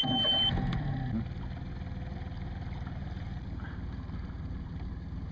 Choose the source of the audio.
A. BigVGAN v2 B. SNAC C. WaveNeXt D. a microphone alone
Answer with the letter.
D